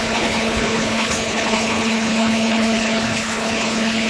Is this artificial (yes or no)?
yes